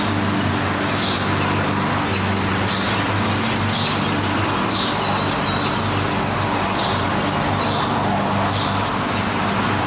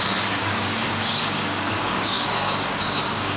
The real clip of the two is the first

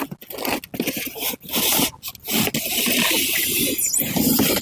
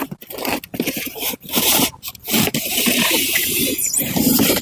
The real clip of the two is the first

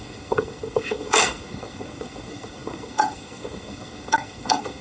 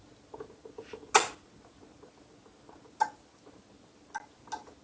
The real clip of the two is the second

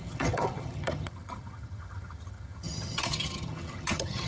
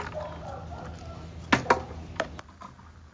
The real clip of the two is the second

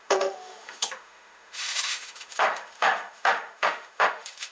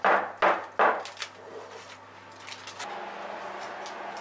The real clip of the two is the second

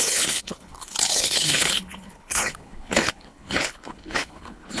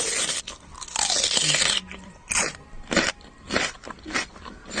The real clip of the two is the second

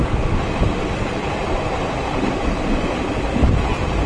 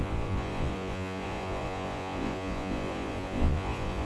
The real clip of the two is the first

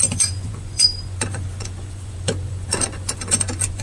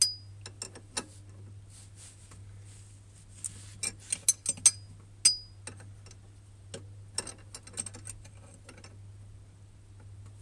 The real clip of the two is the second